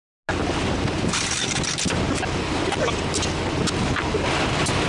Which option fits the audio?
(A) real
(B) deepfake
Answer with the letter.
A